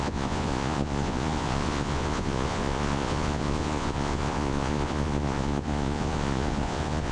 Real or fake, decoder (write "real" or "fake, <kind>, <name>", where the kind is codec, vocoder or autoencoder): fake, vocoder, Vocos